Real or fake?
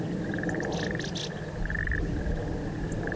real